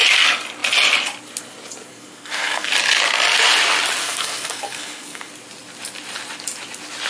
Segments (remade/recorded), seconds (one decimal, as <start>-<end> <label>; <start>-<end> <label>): 0.0-1.9 recorded; 1.9-2.7 remade; 2.7-4.0 recorded; 4.0-5.3 remade; 5.3-7.1 recorded